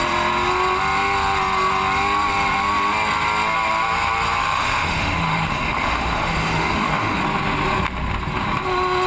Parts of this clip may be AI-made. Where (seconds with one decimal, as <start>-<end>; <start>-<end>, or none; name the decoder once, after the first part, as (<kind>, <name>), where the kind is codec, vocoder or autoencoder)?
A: 4.4-7.2 (autoencoder, DAC-VAE)